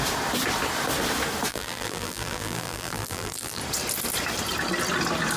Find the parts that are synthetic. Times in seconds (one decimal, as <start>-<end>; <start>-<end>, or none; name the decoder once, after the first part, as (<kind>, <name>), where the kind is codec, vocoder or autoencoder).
1.5-3.6 (vocoder, BigVGAN v2)